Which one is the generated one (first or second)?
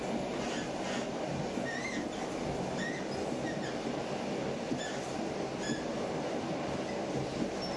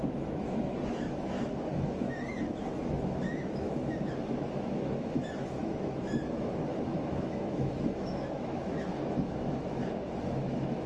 second